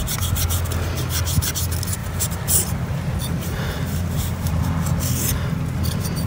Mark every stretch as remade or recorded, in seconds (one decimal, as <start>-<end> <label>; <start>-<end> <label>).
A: 0.0-2.0 recorded; 2.0-4.6 remade; 4.6-6.3 recorded